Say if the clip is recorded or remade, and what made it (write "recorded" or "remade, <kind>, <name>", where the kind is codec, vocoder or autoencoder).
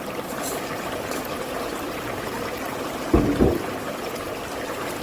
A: remade, vocoder, BigVGAN v2